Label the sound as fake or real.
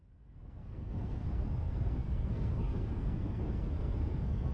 fake